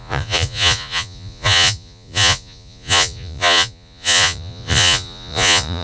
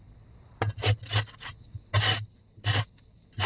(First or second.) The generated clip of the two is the first